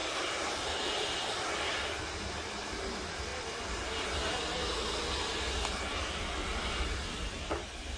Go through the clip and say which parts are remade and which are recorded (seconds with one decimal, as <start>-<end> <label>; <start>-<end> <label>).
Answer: 0.0-8.0 recorded